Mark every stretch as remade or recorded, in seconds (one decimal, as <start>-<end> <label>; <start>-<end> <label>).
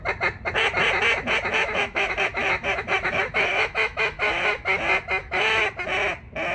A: 0.0-1.5 recorded; 1.5-4.8 remade; 4.8-5.2 recorded; 5.2-5.7 remade; 5.7-6.5 recorded